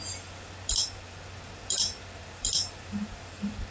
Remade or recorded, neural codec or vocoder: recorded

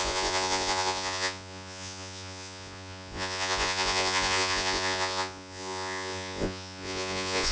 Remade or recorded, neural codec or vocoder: remade, vocoder, Vocos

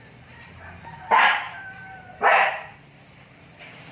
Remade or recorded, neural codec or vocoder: remade, vocoder, BigVGAN v2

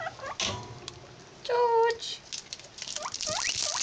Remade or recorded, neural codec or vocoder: recorded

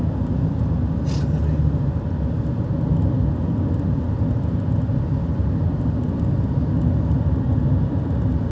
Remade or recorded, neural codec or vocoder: recorded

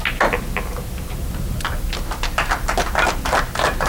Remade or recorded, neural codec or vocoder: recorded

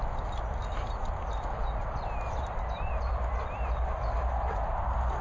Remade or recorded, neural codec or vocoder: recorded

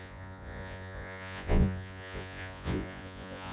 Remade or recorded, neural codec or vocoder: remade, vocoder, Vocos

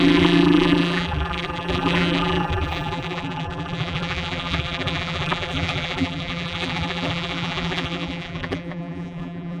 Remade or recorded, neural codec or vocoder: remade, vocoder, BigVGAN v2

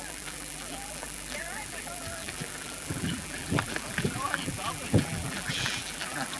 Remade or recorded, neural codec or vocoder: remade, vocoder, BigVGAN v2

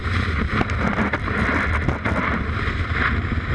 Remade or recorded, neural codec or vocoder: recorded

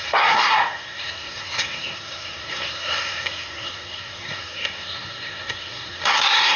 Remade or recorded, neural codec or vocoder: remade, codec, SNAC